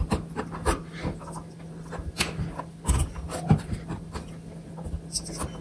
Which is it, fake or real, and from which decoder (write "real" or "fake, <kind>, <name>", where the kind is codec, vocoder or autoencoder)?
real